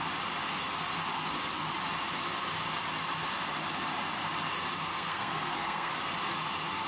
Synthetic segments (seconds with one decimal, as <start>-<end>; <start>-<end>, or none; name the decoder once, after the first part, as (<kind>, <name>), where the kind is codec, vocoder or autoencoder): 4.9-5.9 (codec, SNAC)

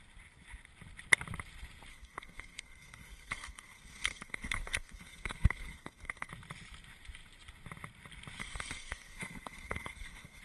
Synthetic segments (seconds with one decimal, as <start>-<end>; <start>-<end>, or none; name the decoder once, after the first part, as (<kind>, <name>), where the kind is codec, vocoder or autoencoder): 1.9-6.3 (codec, SNAC); 8.4-10.4